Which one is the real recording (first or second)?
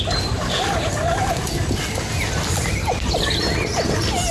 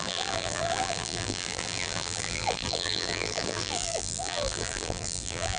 first